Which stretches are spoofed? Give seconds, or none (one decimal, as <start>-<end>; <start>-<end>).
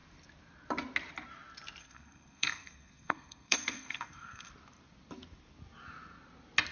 1.8-4.5